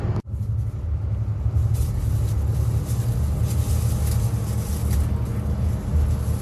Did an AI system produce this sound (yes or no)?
no